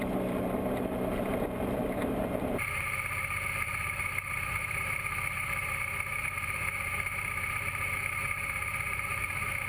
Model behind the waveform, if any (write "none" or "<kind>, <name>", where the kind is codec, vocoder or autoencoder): vocoder, BigVGAN v2